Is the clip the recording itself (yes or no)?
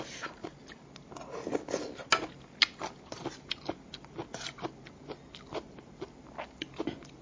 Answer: yes